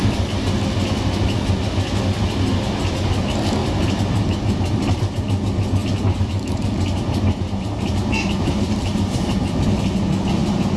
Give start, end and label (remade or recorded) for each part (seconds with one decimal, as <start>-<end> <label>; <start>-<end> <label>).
0.0-3.6 recorded; 3.6-5.2 remade; 5.2-5.8 recorded; 5.8-9.6 remade; 9.6-10.8 recorded